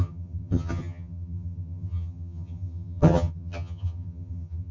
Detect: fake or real fake